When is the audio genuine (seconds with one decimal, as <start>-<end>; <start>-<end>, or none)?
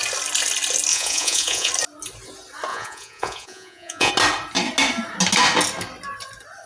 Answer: 0.0-0.9; 1.7-2.7; 4.1-6.7